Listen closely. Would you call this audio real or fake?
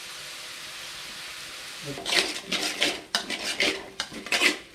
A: real